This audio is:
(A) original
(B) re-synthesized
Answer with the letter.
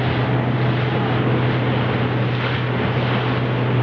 B